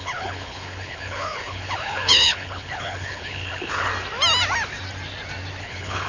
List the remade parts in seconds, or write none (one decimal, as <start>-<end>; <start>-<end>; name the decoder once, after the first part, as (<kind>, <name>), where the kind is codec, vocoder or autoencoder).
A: 0.0-3.9 (codec, HILCodec); 5.6-6.1